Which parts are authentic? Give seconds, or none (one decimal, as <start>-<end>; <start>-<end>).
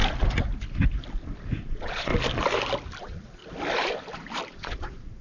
0.0-1.6; 2.1-3.0; 3.4-4.5